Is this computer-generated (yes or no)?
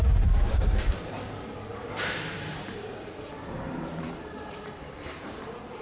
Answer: yes